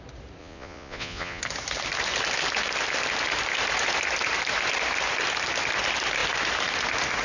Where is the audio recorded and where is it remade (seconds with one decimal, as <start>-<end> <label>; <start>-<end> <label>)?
0.0-0.4 recorded; 0.4-1.4 remade; 1.4-7.2 recorded